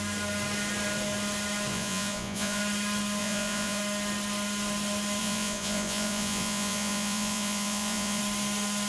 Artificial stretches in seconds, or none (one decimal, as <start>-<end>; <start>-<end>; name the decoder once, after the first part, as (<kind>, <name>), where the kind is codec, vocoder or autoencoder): 1.7-2.6 (vocoder, Vocos); 3.2-3.8; 5.2-8.2

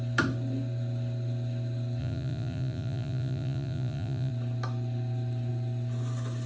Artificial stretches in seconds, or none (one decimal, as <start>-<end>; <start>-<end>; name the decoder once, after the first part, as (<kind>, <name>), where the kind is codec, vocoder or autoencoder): 2.0-4.3 (vocoder, Vocos)

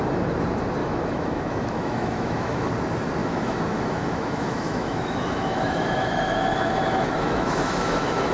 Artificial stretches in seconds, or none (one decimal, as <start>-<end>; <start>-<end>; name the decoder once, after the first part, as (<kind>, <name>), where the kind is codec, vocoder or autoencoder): 0.8-2.7 (autoencoder, DAC-VAE); 3.2-8.3

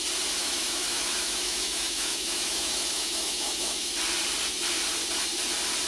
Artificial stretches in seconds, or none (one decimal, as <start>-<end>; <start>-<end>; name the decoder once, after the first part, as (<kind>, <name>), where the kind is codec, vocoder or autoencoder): 0.4-3.9 (autoencoder, DAC-VAE)